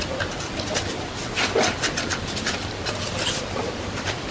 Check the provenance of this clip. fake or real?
real